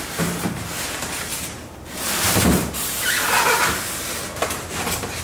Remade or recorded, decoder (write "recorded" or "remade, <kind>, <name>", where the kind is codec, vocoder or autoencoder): remade, vocoder, BigVGAN v2